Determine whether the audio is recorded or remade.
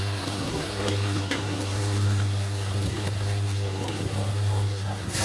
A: remade